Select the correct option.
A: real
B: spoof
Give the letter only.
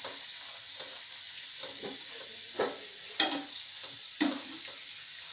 A